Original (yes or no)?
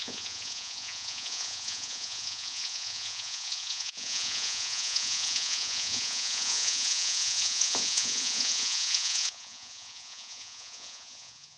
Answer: no